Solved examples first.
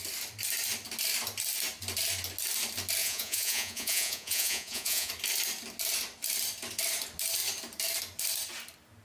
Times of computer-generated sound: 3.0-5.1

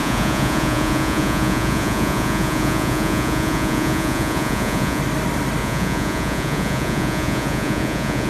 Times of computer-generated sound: 0.0-5.0; 5.6-8.3